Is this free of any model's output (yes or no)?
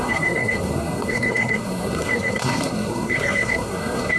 no